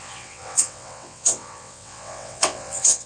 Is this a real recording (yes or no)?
no